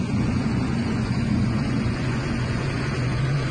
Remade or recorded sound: remade